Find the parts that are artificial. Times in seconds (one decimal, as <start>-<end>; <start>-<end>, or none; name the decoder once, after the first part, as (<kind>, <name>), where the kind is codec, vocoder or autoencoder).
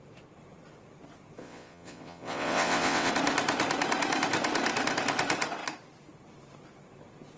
1.4-3.1 (vocoder, WaveNeXt)